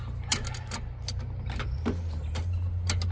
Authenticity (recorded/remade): recorded